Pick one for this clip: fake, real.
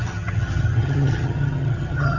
fake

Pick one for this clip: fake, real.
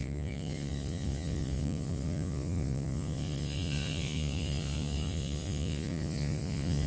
fake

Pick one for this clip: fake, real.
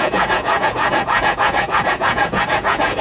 fake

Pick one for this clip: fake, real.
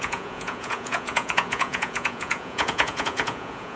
fake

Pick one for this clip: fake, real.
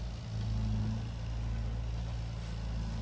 real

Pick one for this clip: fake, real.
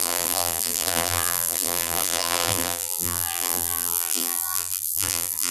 fake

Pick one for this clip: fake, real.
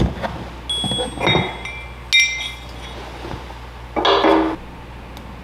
real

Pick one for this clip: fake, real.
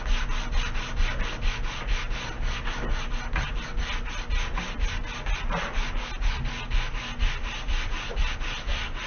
real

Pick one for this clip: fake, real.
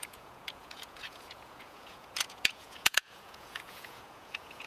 fake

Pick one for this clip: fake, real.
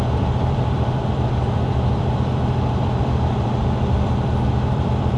fake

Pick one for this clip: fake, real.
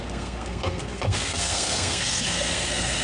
fake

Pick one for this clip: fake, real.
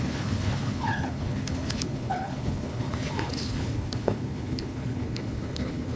fake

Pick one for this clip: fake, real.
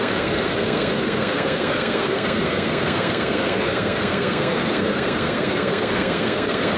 fake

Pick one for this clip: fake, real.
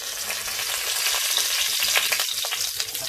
real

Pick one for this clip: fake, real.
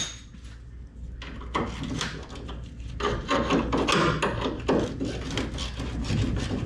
real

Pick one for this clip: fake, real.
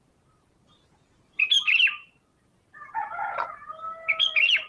real